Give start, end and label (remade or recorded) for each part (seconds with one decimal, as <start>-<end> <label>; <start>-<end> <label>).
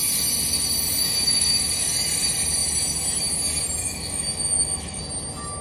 0.0-1.0 recorded; 1.0-1.6 remade; 1.6-3.8 recorded; 3.8-5.0 remade; 5.0-5.6 recorded